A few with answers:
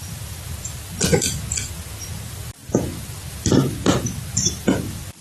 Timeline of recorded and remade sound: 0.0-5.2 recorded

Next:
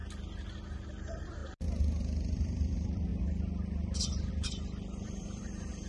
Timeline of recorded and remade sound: 0.0-0.9 recorded; 0.9-1.4 remade; 1.4-2.0 recorded; 2.0-3.1 remade; 3.1-4.3 recorded; 4.3-5.9 remade

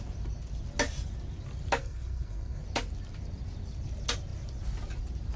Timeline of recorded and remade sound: 0.0-1.8 recorded; 1.8-2.6 remade; 2.6-5.4 recorded

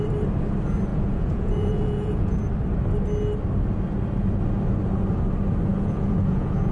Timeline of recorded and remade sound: 0.0-0.9 recorded; 0.9-2.4 remade; 2.4-5.7 recorded; 5.7-6.7 remade

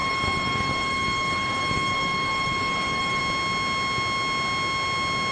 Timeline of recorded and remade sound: 0.0-3.2 remade; 3.2-5.3 recorded

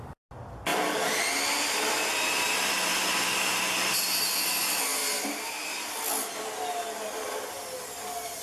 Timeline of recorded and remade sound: 0.0-8.4 recorded

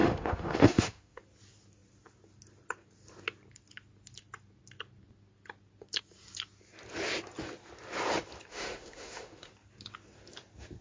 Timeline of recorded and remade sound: 0.0-1.2 remade; 1.2-8.5 recorded; 8.5-9.5 remade; 9.5-10.8 recorded

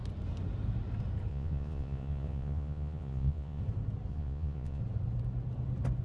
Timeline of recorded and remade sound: 0.0-1.3 recorded; 1.3-3.6 remade; 3.6-4.1 recorded; 4.1-4.8 remade; 4.8-6.0 recorded